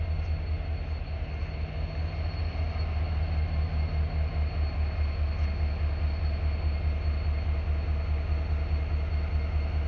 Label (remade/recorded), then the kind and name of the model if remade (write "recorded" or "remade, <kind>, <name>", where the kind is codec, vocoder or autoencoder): recorded